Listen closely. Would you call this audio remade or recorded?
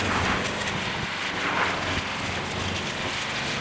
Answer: recorded